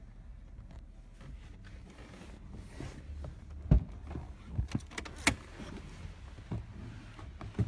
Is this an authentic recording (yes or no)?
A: yes